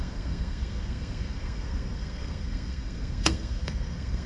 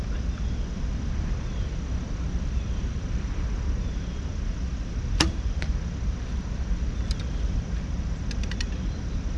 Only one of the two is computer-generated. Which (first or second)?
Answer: first